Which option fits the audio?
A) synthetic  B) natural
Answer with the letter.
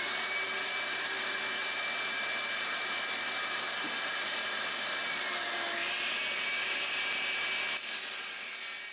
B